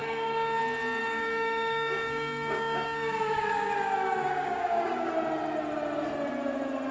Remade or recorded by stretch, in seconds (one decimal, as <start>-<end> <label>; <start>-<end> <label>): 0.0-0.6 remade; 0.6-1.0 recorded; 1.0-5.1 remade; 5.1-6.9 recorded